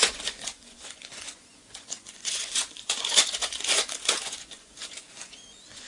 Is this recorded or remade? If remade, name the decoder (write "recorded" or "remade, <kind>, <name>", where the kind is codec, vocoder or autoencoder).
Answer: remade, vocoder, Vocos